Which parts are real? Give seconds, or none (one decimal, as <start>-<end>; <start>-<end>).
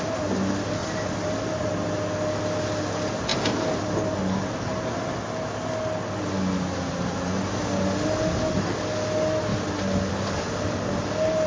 0.0-11.5